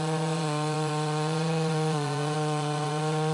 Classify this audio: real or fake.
fake